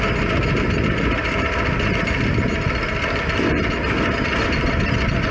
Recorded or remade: recorded